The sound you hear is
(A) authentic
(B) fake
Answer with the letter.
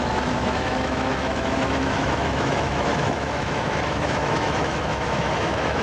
B